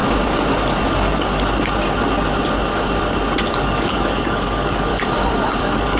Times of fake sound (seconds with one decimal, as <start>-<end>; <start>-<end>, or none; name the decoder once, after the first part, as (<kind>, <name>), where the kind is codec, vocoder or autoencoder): 3.6-4.9 (codec, DAC); 5.6-6.0